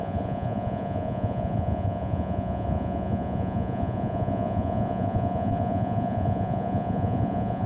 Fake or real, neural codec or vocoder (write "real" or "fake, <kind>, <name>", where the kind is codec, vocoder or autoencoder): fake, vocoder, Vocos